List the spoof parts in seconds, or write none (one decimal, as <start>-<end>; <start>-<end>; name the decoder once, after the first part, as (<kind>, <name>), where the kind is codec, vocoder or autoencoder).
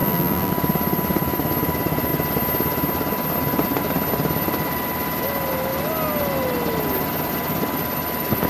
0.0-0.5 (vocoder, BigVGAN v2)